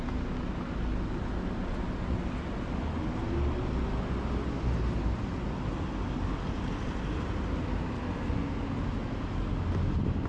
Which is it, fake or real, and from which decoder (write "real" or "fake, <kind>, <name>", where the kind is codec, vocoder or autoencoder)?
real